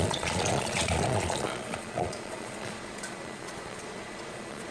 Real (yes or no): no